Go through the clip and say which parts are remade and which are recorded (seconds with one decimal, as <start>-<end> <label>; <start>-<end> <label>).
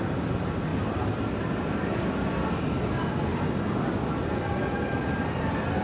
0.0-5.8 recorded